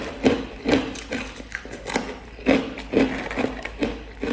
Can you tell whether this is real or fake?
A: real